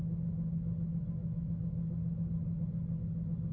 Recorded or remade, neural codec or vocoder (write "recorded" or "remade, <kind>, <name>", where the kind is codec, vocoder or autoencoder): recorded